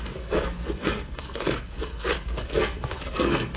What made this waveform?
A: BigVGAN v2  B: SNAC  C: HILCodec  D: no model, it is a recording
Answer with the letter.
B